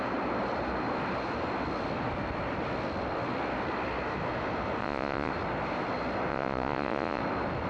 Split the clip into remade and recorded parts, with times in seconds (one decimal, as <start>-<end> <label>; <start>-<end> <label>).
0.0-4.8 recorded; 4.8-5.3 remade; 5.3-6.3 recorded; 6.3-7.2 remade; 7.2-7.7 recorded